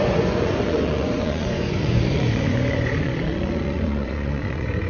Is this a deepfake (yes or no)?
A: yes